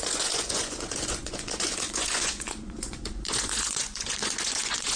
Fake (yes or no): yes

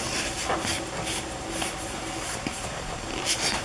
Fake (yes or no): no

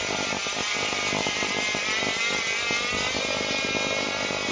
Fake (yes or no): no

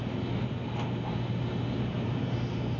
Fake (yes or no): no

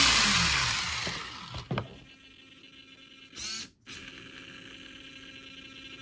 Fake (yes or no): no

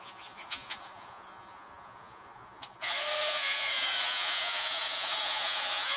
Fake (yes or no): yes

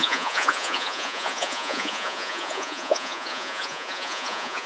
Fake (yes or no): yes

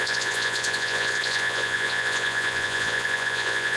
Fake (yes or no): yes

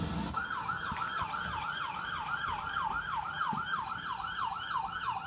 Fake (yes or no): no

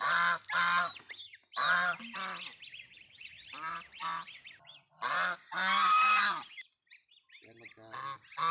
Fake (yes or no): no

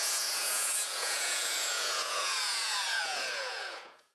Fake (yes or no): yes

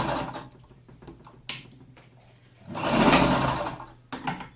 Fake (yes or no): no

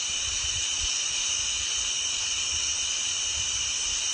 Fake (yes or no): no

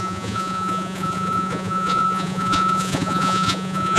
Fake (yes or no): yes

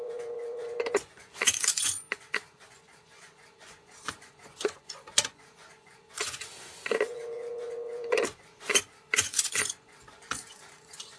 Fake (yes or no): yes